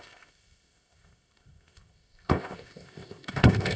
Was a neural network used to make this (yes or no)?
yes